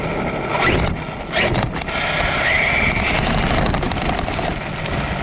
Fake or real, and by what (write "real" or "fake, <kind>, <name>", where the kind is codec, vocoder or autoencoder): real